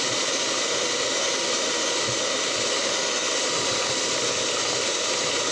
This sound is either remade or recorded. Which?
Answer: recorded